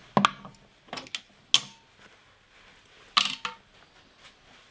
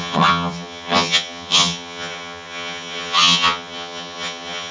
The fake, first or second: second